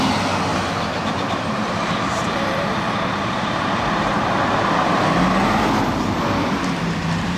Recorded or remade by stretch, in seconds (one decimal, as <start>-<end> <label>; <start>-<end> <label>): 0.0-0.5 recorded; 0.5-4.9 remade; 4.9-7.4 recorded